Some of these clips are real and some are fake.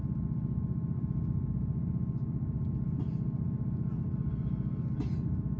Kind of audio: real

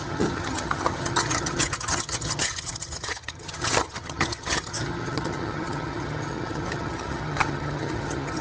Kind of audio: fake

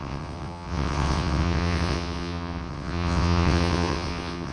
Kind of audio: fake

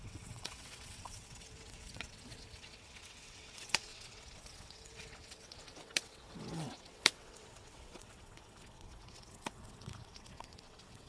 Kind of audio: fake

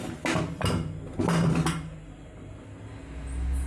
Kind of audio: real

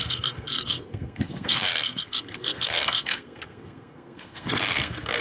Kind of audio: fake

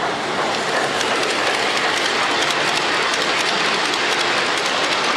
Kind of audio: real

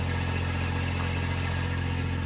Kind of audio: real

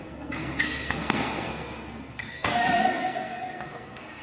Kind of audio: fake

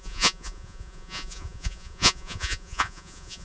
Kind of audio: fake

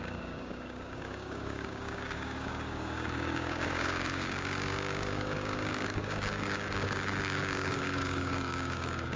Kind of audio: fake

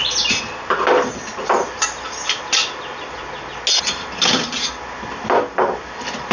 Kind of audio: real